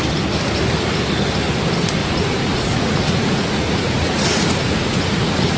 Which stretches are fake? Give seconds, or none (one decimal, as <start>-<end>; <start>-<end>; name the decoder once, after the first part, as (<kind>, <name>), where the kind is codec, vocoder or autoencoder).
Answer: 2.0-5.6 (vocoder, Vocos)